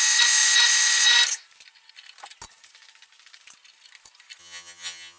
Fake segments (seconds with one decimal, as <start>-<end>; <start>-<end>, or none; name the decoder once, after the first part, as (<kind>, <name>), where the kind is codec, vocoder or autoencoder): 4.4-5.2 (vocoder, HiFi-GAN)